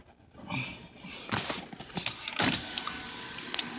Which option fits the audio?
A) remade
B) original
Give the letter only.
B